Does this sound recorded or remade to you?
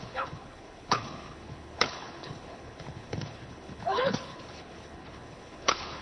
remade